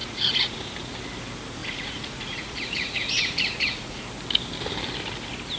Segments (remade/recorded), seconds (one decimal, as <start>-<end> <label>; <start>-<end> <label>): 0.0-0.7 remade; 0.7-1.6 recorded; 1.6-4.0 remade; 4.0-5.6 recorded